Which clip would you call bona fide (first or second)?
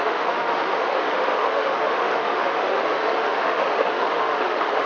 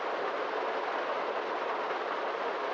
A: second